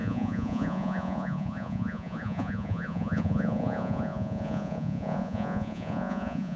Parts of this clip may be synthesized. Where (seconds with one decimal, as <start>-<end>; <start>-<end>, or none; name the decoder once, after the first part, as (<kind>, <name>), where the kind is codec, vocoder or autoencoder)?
0.0-6.6 (vocoder, Vocos)